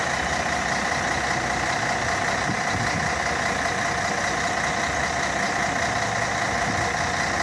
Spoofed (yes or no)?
no